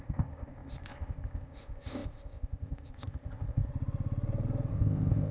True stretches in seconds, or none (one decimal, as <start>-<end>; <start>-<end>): 3.7-4.7